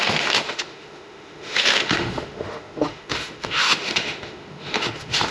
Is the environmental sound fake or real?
fake